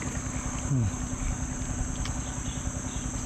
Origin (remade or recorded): recorded